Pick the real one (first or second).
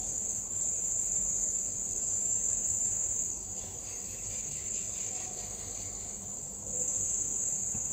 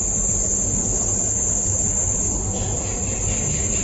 second